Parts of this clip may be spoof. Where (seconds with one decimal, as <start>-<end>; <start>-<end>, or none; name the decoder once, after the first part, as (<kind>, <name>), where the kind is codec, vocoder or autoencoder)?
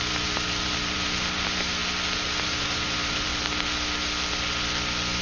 0.0-1.8 (vocoder, BigVGAN v2); 2.4-3.3